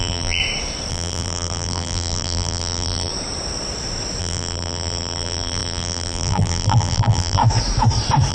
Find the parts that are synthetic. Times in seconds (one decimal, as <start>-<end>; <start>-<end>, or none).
0.0-0.4; 0.9-3.1; 4.2-7.4